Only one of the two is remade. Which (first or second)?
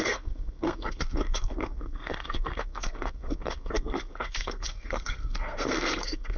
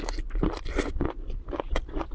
first